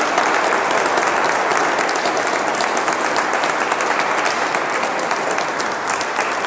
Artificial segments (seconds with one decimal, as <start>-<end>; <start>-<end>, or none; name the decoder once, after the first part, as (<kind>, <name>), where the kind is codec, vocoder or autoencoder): none